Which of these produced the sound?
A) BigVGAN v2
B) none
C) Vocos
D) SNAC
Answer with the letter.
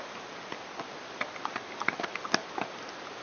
B